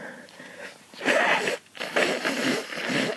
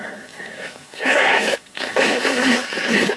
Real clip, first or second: first